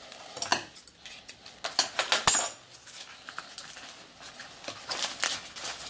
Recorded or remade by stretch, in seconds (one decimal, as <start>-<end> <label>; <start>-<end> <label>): 0.0-5.9 recorded